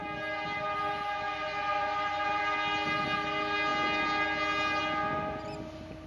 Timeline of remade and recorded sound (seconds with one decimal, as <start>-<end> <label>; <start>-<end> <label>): 0.0-1.7 recorded; 1.7-2.4 remade; 2.4-6.1 recorded